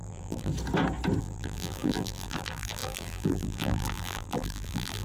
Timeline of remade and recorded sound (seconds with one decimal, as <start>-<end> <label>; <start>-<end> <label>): 0.0-0.5 remade; 0.5-1.2 recorded; 1.2-5.0 remade